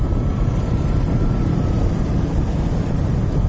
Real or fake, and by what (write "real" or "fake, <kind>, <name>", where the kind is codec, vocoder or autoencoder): real